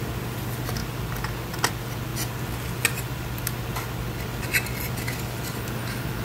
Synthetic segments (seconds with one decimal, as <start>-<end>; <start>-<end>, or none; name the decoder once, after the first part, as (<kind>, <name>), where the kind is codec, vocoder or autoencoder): none